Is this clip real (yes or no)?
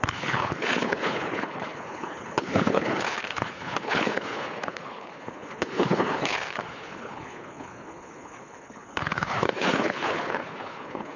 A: no